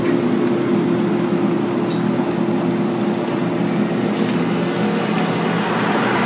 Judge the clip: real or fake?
real